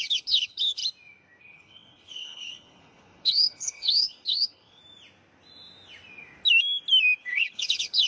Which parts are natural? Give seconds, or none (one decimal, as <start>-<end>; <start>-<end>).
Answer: 0.8-1.4; 4.8-7.2